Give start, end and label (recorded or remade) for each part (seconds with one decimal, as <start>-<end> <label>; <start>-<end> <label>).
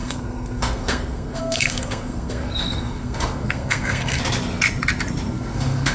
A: 0.0-4.2 remade; 4.2-5.3 recorded; 5.3-5.9 remade